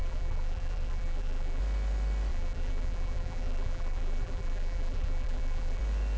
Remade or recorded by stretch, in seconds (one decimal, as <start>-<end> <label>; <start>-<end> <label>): 0.0-1.6 remade; 1.6-2.3 recorded; 2.3-5.8 remade; 5.8-6.2 recorded